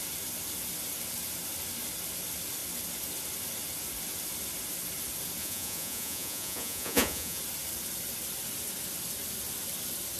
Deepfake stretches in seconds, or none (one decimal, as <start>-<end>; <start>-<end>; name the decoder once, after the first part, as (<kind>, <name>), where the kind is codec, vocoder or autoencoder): 5.4-7.4 (vocoder, Vocos)